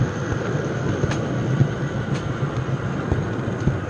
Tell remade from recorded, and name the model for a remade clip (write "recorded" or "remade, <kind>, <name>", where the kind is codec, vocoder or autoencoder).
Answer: recorded